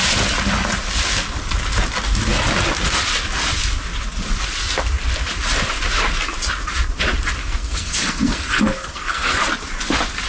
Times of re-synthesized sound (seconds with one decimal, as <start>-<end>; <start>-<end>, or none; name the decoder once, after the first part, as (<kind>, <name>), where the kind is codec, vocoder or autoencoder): 7.4-9.4 (codec, SNAC)